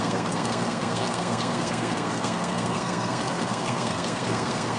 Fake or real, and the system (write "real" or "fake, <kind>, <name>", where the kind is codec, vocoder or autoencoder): fake, codec, SNAC